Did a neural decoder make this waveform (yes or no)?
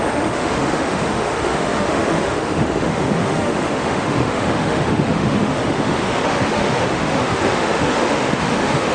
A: yes